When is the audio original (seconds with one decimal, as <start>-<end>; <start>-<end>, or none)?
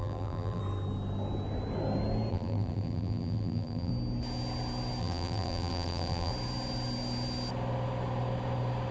0.6-2.3; 3.9-5.0; 6.3-8.9